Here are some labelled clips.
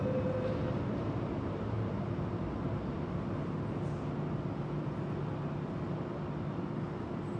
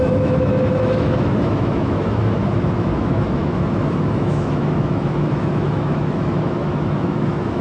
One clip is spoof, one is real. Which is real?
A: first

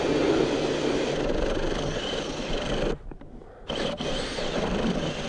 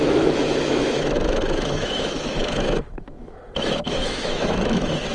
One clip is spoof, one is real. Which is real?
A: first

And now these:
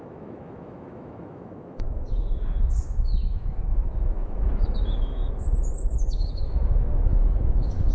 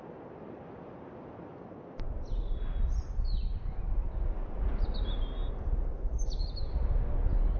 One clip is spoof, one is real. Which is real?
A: second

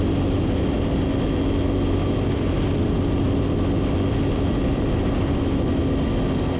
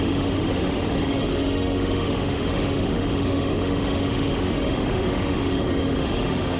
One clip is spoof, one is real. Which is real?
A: first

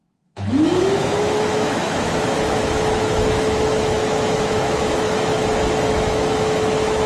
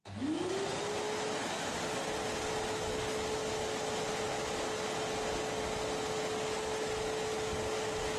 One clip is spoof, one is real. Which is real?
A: second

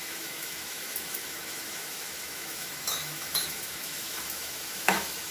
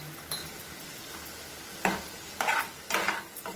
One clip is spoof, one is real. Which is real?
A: second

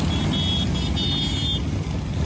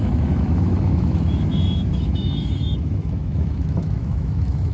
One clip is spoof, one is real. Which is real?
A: first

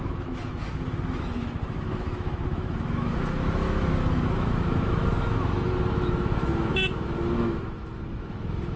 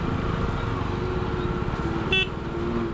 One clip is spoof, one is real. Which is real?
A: second